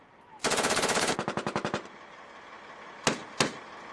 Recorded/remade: recorded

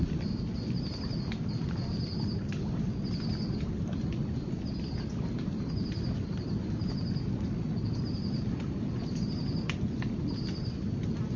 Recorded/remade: recorded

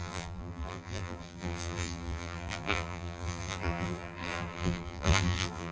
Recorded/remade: remade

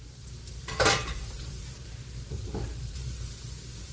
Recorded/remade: remade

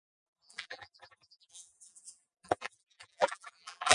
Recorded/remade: remade